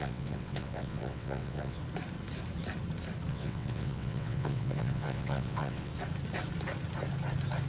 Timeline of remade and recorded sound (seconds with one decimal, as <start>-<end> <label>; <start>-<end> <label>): 0.0-1.8 remade; 1.8-3.3 recorded; 3.3-5.9 remade; 5.9-7.7 recorded